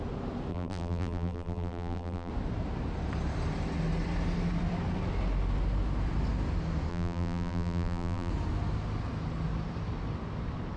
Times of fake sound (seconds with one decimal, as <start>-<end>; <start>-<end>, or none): 0.5-2.3; 6.9-8.3